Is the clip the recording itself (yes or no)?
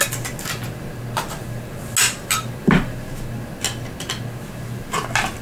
yes